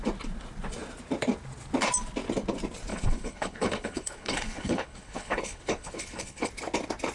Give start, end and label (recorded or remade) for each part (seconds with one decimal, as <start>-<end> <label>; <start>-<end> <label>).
0.0-2.9 recorded; 2.9-6.5 remade; 6.5-7.1 recorded